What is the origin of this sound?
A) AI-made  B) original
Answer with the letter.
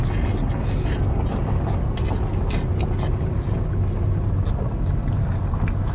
B